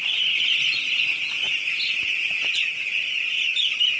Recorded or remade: recorded